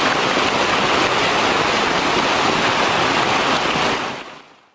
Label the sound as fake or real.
real